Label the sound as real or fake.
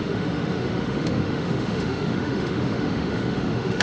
fake